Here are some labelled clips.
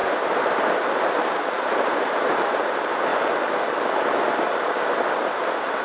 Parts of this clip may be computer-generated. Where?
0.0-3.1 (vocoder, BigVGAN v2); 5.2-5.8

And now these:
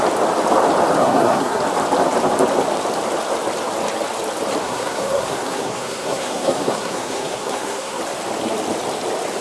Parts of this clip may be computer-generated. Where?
1.0-1.6 (codec, SNAC); 4.6-8.0

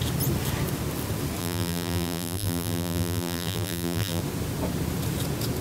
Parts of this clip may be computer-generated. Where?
1.4-4.2 (vocoder, BigVGAN v2)